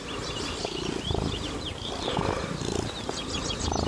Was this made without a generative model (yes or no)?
yes